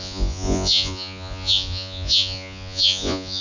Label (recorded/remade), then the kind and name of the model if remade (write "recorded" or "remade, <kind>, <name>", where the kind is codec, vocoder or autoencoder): remade, vocoder, Vocos